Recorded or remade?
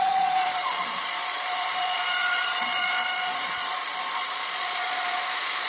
remade